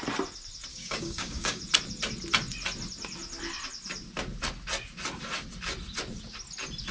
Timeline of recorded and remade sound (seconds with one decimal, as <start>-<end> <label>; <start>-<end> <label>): 0.0-0.7 recorded; 0.7-1.6 remade; 1.6-6.9 recorded